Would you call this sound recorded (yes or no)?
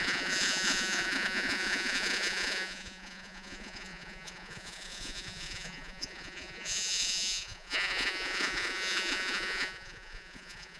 no